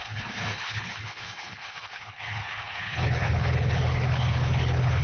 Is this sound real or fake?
fake